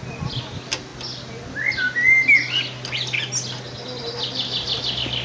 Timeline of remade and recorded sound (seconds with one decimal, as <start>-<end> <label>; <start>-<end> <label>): 0.0-5.2 recorded

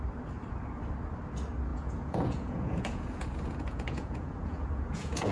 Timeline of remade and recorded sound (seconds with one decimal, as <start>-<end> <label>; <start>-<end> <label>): 0.0-1.7 recorded; 1.7-5.3 remade

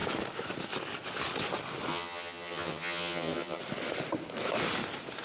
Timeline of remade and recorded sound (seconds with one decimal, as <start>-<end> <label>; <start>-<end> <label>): 0.0-1.9 recorded; 1.9-3.6 remade; 3.6-5.2 recorded

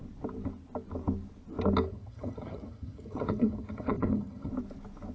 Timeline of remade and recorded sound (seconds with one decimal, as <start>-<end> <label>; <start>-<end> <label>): 0.0-1.9 recorded; 1.9-4.5 remade; 4.5-5.1 recorded